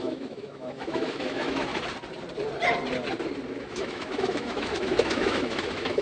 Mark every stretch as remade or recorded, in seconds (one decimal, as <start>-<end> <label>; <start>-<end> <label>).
0.0-1.7 remade; 1.7-3.6 recorded; 3.6-6.0 remade